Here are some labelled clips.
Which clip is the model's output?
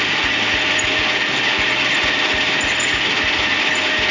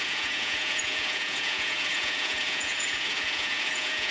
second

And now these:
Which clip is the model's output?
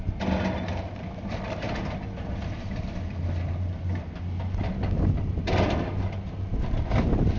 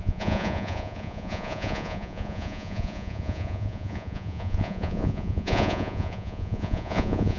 second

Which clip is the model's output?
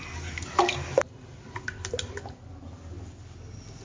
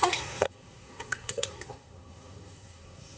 second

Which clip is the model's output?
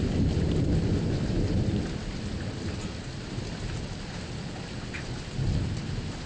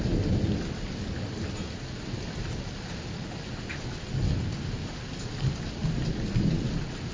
first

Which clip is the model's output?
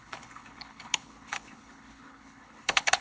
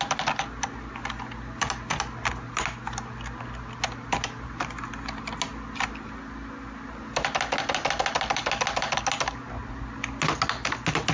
first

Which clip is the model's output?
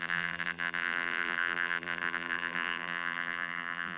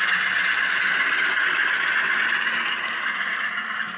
first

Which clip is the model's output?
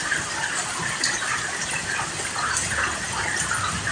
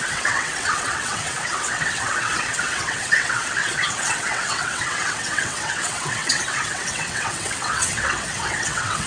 second